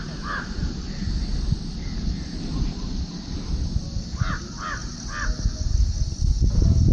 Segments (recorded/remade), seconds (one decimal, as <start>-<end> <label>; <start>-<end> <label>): 0.0-6.9 recorded